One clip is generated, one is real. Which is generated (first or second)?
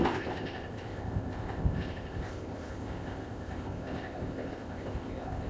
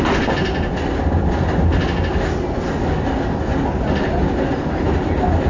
first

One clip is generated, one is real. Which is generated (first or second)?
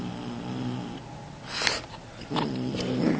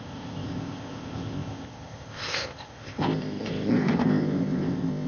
second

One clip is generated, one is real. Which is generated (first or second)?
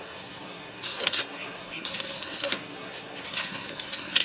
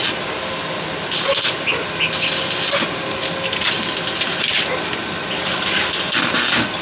first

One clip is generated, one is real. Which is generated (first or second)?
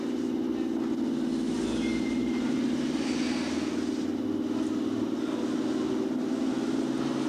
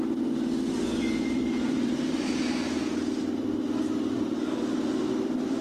second